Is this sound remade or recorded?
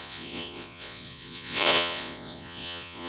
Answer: remade